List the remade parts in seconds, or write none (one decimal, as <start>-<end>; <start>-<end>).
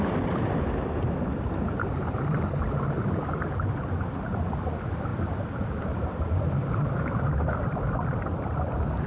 5.1-6.4